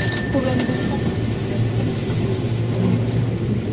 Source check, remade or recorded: recorded